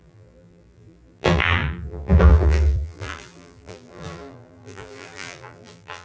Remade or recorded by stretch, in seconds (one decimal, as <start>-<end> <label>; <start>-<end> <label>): 0.0-6.0 remade